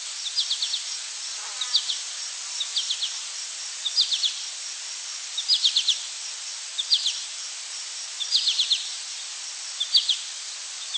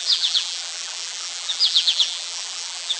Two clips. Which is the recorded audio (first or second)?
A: first